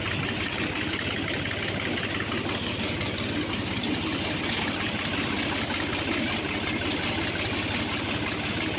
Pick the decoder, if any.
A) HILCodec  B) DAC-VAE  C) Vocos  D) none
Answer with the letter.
D